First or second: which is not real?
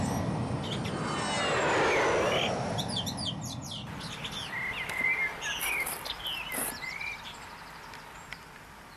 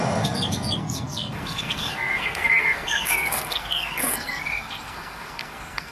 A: second